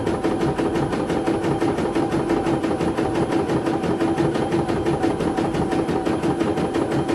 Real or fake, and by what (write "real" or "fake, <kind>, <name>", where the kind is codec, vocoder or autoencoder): real